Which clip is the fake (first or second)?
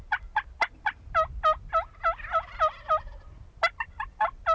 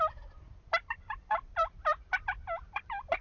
second